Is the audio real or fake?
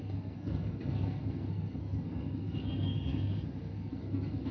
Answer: fake